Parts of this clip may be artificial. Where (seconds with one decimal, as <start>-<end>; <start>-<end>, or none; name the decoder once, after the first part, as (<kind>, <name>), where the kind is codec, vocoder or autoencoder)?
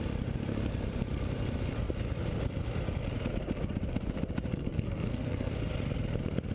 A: 4.5-5.5 (codec, SNAC)